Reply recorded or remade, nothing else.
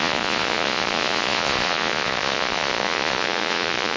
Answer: remade